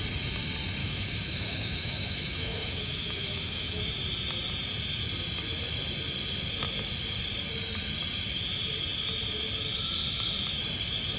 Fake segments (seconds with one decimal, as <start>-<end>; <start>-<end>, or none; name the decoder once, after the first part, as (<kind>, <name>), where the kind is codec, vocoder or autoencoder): 0.8-3.8 (autoencoder, DAC-VAE)